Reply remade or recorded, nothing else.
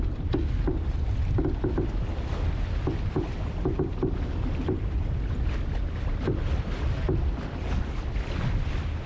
recorded